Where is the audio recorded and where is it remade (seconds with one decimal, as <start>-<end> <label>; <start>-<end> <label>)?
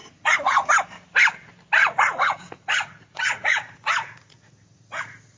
0.0-0.7 remade; 0.7-1.8 recorded; 1.8-5.0 remade; 5.0-5.4 recorded